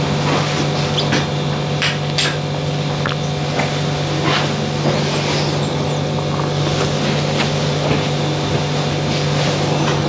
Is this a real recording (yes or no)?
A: yes